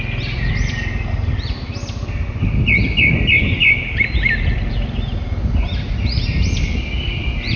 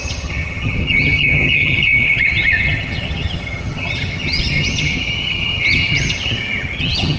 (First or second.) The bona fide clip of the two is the first